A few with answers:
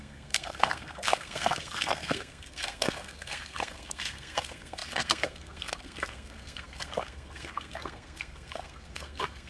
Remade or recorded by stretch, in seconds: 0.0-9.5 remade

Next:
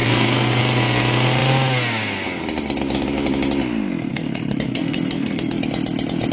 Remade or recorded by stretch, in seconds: 0.0-0.6 remade; 0.6-4.1 recorded; 4.1-5.6 remade; 5.6-6.3 recorded

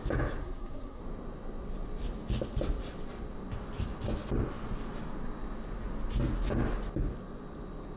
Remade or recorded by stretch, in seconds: 0.0-0.4 recorded; 0.4-1.0 remade; 1.0-8.0 recorded

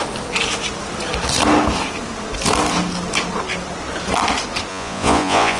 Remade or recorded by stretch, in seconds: 0.0-4.7 recorded; 4.7-5.6 remade

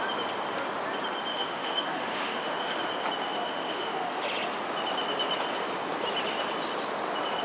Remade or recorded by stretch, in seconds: 0.0-1.3 recorded; 1.3-2.8 remade; 2.8-3.4 recorded; 3.4-4.2 remade; 4.2-7.4 recorded